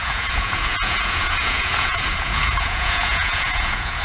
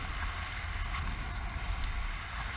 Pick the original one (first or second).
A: second